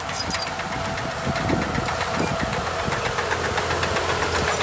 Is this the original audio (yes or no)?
yes